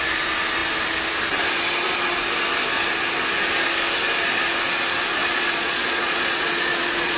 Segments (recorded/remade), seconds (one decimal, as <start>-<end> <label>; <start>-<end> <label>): 0.0-5.2 recorded; 5.2-7.2 remade